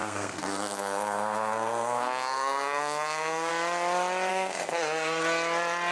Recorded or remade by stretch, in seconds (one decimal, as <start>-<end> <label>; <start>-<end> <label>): 0.0-3.5 remade; 3.5-4.3 recorded; 4.3-5.2 remade; 5.2-5.9 recorded